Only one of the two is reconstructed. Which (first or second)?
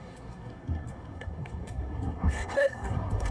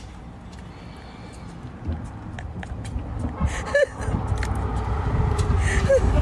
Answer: first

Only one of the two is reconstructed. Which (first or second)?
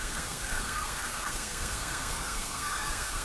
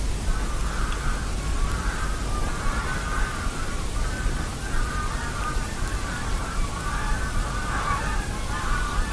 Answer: first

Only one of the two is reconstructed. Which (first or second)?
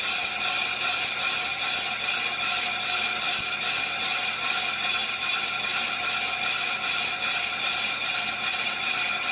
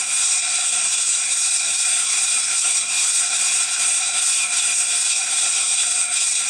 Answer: second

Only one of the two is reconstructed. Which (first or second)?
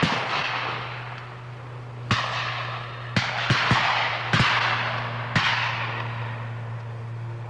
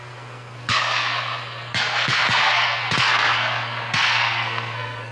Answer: second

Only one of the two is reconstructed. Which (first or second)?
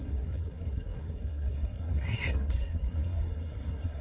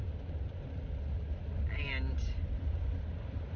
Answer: first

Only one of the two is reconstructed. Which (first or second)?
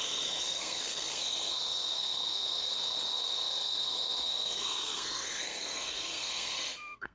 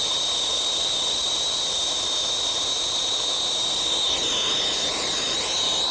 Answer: first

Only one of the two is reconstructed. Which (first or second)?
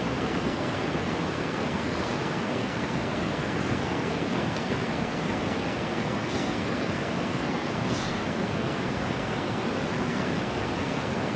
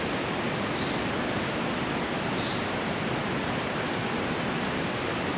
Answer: first